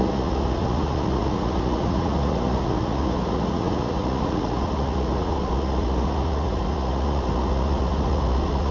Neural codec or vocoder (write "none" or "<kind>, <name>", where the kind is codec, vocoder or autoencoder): vocoder, Vocos